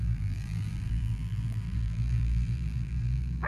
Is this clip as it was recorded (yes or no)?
no